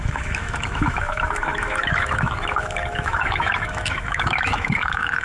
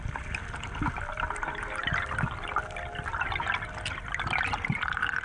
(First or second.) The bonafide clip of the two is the second